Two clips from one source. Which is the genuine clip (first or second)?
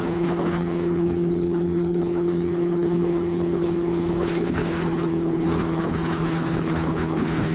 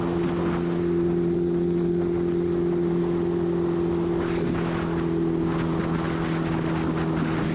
second